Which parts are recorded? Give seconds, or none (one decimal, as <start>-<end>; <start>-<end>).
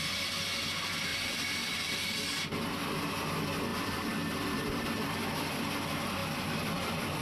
0.0-1.1; 2.1-3.7; 5.3-7.2